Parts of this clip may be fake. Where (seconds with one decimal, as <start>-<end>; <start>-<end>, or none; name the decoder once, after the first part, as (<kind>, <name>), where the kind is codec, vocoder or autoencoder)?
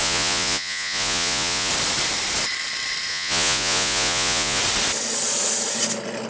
0.0-1.7 (vocoder, Vocos); 3.1-4.6